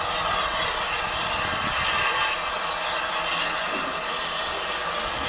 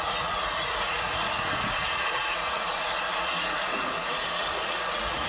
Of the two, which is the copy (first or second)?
second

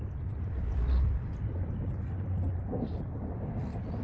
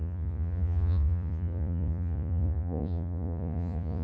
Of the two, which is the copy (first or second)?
second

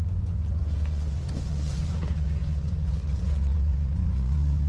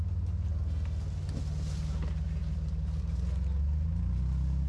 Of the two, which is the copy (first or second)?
first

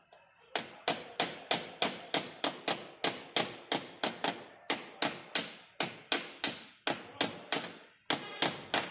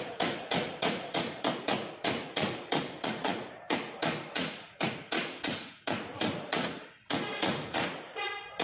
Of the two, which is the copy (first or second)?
second